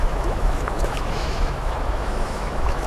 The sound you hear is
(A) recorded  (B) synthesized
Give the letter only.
B